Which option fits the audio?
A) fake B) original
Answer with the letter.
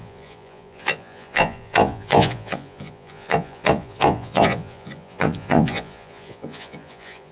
A